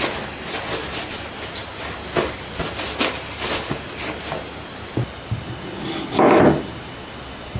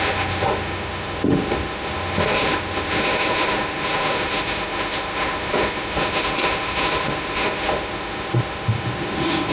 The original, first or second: first